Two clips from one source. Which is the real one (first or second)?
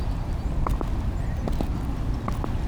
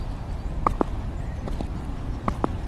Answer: first